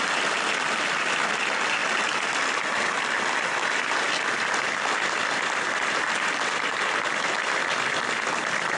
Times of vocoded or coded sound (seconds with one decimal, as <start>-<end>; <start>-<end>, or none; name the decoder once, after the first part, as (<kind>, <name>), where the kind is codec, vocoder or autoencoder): none